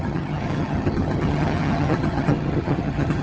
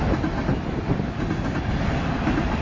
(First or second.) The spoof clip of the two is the first